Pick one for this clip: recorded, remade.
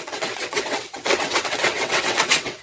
remade